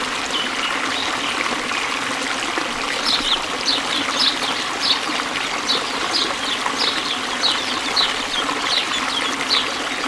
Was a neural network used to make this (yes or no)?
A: no